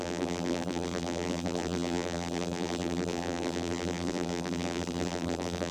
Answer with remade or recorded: remade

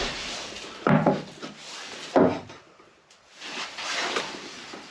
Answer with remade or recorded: remade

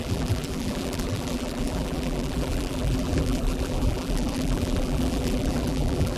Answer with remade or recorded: remade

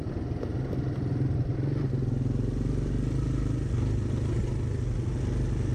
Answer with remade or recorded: recorded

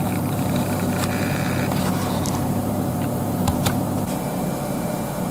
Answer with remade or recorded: remade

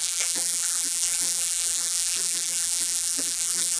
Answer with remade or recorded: remade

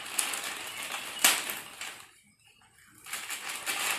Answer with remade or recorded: recorded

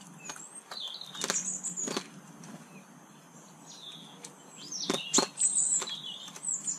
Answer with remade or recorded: recorded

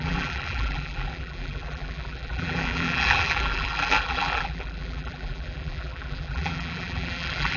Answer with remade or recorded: remade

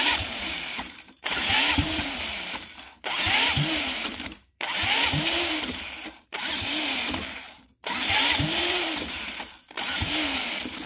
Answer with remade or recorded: remade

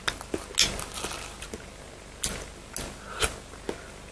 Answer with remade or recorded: recorded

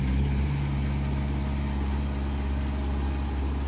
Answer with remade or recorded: recorded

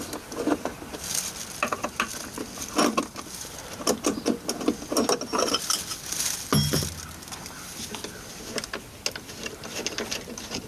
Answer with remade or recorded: recorded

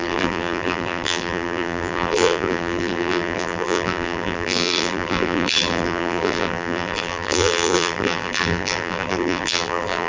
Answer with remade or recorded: remade